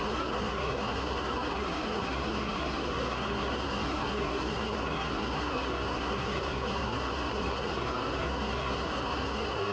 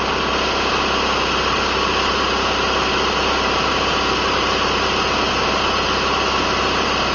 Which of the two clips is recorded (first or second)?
second